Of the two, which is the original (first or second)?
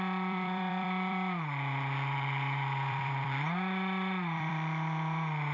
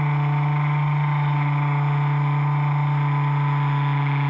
second